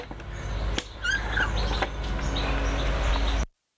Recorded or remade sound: recorded